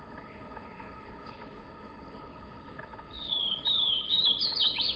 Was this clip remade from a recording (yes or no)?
yes